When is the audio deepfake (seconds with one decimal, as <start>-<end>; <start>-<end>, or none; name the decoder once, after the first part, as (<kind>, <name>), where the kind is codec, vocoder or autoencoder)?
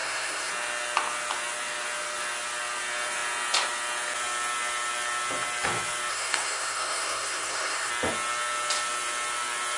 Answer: 0.0-0.5 (codec, SNAC); 6.1-7.9